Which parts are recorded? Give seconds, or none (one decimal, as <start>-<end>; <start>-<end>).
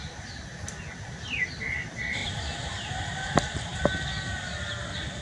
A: 0.0-5.2